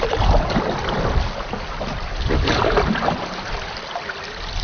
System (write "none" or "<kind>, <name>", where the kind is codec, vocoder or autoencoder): none